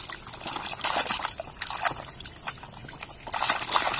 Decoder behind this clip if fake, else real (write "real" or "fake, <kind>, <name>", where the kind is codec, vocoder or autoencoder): real